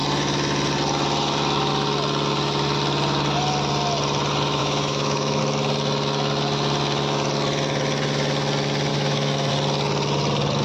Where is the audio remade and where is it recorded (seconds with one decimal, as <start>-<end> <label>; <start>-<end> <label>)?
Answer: 0.0-4.6 recorded; 4.6-5.4 remade; 5.4-8.9 recorded; 8.9-9.5 remade; 9.5-10.6 recorded